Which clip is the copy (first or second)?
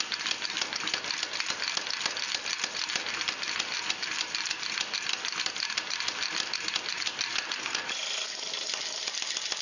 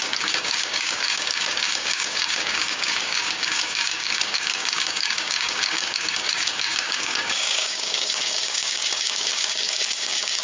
second